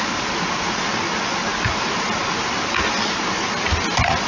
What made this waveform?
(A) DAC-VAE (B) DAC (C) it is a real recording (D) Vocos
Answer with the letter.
C